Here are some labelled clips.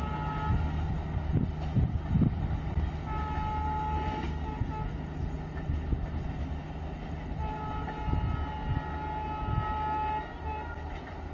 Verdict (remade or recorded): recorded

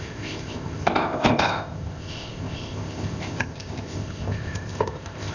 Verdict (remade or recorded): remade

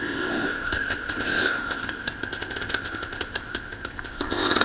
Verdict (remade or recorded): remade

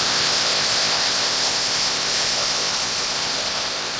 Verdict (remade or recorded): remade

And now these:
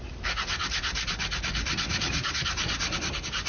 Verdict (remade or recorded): recorded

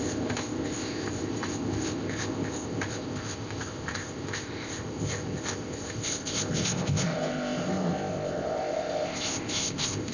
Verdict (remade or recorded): remade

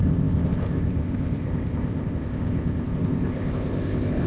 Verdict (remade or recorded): remade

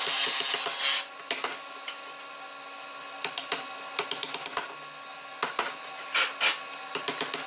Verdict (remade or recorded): recorded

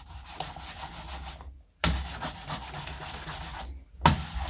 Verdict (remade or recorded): recorded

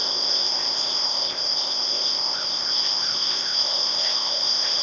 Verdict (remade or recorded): remade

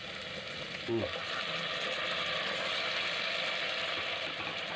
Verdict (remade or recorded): recorded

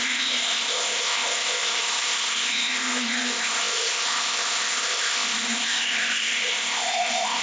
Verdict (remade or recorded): remade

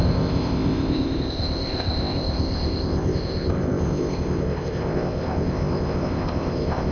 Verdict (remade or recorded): remade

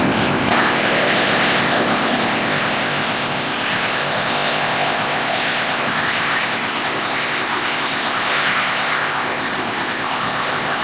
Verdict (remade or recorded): remade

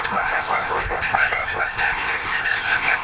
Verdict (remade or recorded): remade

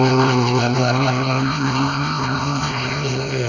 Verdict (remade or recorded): remade